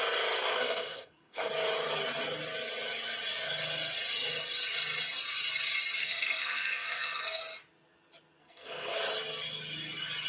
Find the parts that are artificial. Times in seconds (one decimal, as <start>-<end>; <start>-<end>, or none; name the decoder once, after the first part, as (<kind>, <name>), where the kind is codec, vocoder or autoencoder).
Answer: 0.4-1.5 (codec, SNAC); 6.0-7.4; 8.4-9.0